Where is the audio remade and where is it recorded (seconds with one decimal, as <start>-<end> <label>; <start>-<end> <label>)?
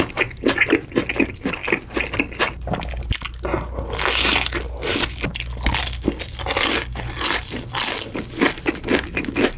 0.0-9.6 recorded